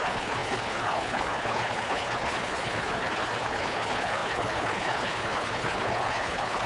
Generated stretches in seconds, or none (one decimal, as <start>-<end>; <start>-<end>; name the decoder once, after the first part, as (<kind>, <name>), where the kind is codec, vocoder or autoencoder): 0.0-6.7 (codec, HILCodec)